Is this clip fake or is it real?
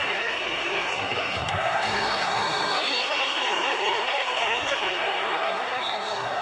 fake